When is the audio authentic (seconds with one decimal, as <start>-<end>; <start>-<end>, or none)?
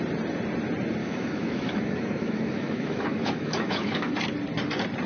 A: 0.0-1.0; 4.1-5.1